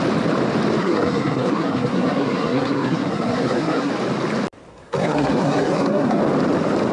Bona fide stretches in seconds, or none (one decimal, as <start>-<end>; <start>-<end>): 0.0-0.8; 3.9-4.7; 6.2-6.9